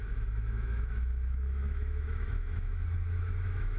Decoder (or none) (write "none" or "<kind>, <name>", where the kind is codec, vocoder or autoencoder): autoencoder, DAC-VAE